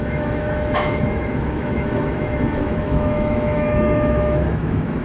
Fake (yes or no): yes